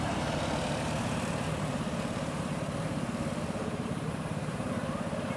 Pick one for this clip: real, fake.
fake